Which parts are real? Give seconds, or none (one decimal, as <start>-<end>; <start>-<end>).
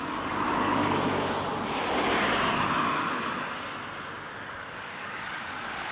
0.8-4.3